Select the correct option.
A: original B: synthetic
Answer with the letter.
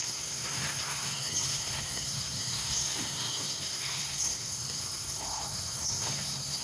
B